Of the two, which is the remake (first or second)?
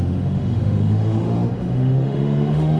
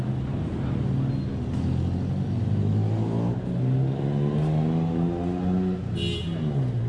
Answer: first